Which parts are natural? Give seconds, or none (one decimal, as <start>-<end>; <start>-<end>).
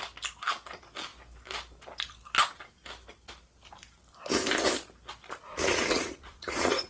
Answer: 0.0-5.5